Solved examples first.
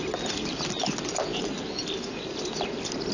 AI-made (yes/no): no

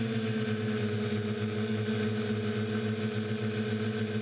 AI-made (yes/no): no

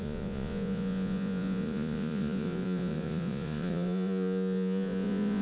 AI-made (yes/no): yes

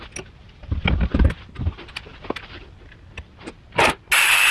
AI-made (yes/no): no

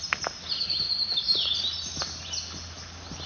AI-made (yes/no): no